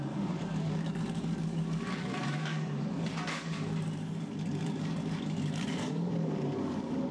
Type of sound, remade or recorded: remade